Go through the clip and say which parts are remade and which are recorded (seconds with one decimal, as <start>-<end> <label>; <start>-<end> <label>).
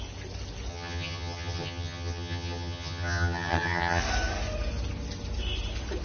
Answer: 0.0-0.7 recorded; 0.7-4.0 remade; 4.0-6.0 recorded